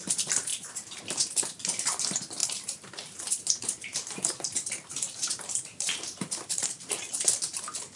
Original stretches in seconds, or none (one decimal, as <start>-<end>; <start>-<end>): 0.0-0.5; 1.0-2.4; 7.2-8.0